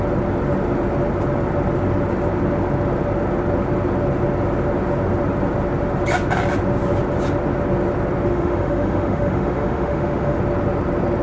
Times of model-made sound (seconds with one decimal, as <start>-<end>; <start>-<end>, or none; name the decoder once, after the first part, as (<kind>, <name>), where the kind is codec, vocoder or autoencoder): 8.3-10.4 (autoencoder, DAC-VAE)